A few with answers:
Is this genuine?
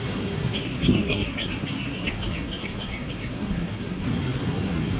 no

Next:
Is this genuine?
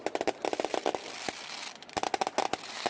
yes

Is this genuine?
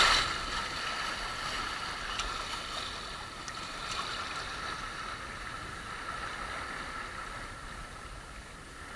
yes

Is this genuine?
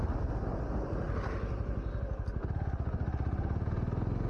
yes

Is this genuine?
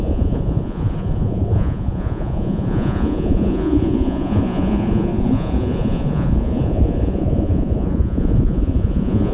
no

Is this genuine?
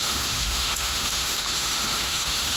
no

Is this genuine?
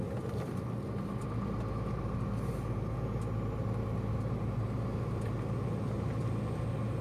yes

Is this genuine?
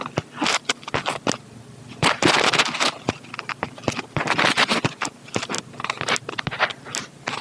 yes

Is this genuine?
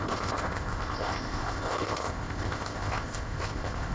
no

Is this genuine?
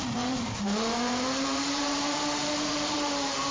no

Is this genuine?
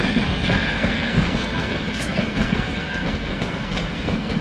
no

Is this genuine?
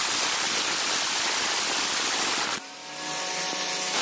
yes